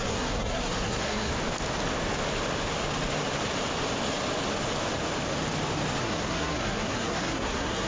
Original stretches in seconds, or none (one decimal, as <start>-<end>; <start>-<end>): 1.3-6.0